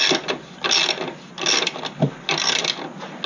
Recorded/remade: recorded